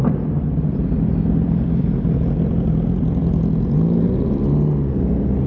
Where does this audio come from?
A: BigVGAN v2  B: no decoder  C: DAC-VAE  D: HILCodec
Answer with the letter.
B